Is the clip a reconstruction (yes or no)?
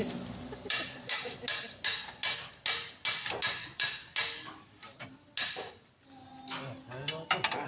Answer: no